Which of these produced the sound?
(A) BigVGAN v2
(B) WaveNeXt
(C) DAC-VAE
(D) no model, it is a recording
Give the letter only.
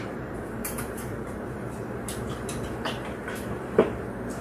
A